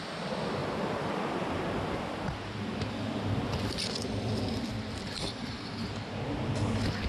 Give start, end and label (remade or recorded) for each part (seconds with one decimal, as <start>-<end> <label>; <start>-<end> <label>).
0.0-0.6 recorded; 0.6-1.2 remade; 1.2-7.1 recorded

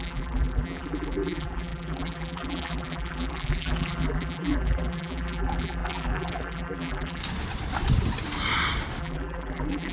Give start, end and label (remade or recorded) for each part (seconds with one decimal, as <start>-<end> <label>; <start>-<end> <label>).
0.0-7.2 remade; 7.2-9.0 recorded; 9.0-9.9 remade

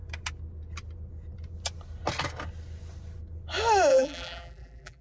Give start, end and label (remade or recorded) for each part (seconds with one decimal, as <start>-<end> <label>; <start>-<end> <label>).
0.0-3.9 recorded; 3.9-5.0 remade

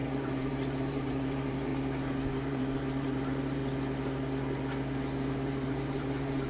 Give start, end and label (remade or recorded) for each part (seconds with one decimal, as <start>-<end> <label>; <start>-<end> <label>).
0.0-1.7 remade; 1.7-2.3 recorded; 2.3-3.6 remade; 3.6-5.3 recorded; 5.3-6.5 remade

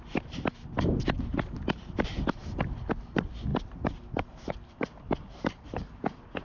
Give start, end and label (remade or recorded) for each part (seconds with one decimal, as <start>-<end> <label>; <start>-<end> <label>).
0.0-3.5 recorded; 3.5-6.0 remade; 6.0-6.4 recorded

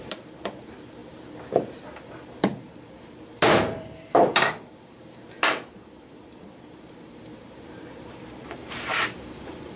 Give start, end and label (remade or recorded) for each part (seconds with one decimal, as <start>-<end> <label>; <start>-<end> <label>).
0.0-9.8 remade

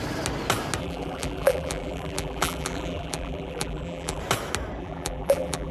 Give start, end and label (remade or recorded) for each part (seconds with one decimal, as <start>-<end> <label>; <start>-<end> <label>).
0.0-0.8 recorded; 0.8-4.2 remade; 4.2-4.8 recorded; 4.8-5.7 remade

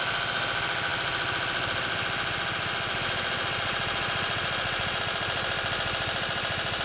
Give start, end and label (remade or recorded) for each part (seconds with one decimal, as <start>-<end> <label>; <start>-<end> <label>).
0.0-6.8 recorded